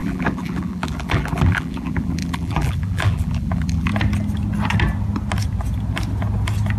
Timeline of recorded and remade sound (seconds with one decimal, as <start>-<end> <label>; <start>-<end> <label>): 0.0-3.9 remade; 3.9-6.8 recorded